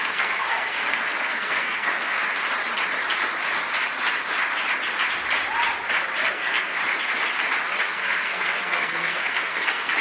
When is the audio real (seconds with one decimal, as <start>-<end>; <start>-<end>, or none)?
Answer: 2.2-6.3; 6.8-7.8